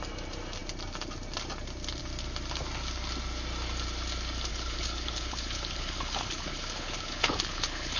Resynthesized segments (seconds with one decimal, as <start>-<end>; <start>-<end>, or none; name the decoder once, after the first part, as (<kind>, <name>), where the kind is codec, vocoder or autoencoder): 4.5-8.0 (codec, HILCodec)